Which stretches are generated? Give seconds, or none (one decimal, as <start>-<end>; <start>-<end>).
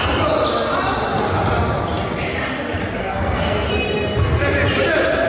3.0-3.7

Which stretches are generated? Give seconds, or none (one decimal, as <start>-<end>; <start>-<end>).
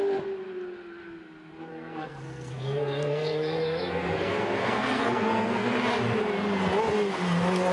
1.7-5.7